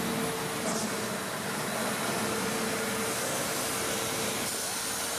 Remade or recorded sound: recorded